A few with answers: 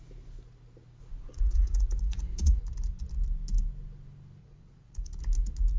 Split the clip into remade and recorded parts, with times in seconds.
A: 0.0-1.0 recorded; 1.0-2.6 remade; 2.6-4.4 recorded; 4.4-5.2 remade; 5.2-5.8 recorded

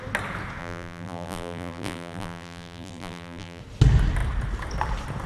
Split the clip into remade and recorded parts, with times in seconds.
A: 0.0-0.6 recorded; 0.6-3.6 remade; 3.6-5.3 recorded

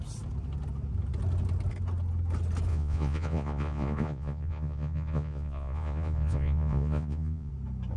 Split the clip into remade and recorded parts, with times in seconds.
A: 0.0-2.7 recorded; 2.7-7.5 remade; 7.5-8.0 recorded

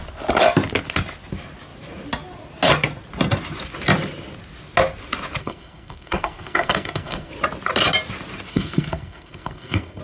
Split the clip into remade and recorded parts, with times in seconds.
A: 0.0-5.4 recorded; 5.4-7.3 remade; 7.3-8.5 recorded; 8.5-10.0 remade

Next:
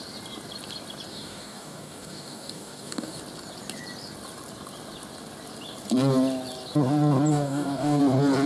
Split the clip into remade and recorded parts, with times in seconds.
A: 0.0-1.1 recorded; 1.1-3.2 remade; 3.2-7.3 recorded; 7.3-8.0 remade; 8.0-8.5 recorded